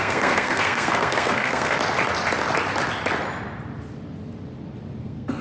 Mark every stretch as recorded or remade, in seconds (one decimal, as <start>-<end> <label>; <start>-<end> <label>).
0.0-1.8 remade; 1.8-5.0 recorded; 5.0-5.4 remade